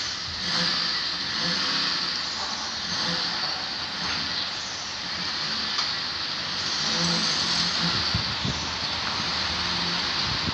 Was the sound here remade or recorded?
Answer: recorded